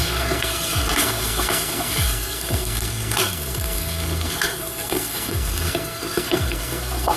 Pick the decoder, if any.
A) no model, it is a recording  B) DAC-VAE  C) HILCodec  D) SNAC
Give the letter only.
D